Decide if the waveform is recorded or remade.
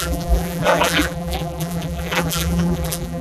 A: remade